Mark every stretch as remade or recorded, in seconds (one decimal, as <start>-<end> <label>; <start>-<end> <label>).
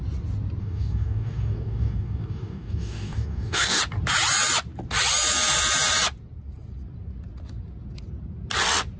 0.0-0.6 recorded; 0.6-3.8 remade; 3.8-9.0 recorded